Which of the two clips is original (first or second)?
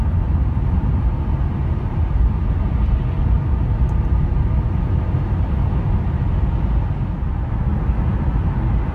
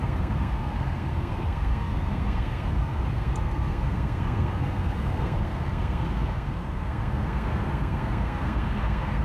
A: first